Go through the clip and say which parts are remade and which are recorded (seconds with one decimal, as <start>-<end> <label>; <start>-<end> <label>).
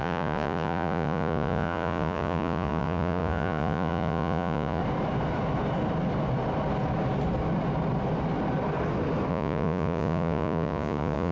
0.0-4.8 remade; 4.8-9.3 recorded; 9.3-11.3 remade